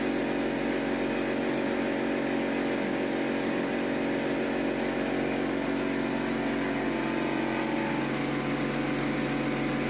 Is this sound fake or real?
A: real